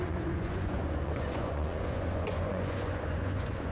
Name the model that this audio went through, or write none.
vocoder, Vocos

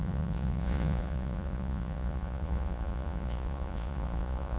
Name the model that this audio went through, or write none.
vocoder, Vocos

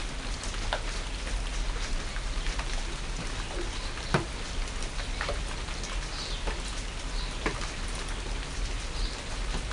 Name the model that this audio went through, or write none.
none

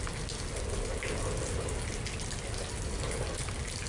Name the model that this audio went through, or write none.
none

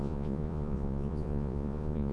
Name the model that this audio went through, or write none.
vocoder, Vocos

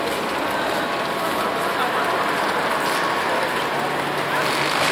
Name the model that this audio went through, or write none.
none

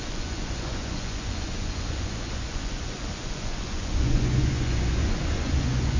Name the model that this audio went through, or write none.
vocoder, Vocos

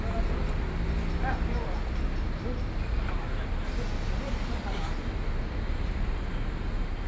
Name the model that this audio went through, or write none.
none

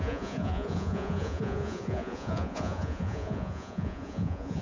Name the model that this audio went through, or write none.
vocoder, Vocos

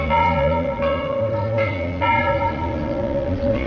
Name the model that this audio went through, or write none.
vocoder, Vocos